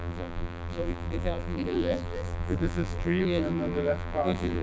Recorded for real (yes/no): no